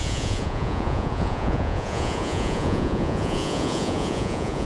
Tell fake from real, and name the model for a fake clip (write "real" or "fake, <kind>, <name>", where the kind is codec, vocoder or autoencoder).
fake, vocoder, Vocos